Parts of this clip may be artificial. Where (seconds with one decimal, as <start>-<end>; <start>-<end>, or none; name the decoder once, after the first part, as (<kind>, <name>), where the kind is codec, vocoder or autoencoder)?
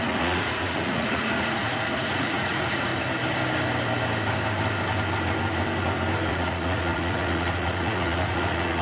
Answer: 0.0-2.9 (vocoder, Vocos); 6.3-8.8